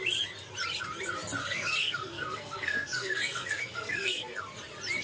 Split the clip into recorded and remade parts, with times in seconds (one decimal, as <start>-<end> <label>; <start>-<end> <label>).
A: 0.0-1.4 recorded; 1.4-4.4 remade; 4.4-5.0 recorded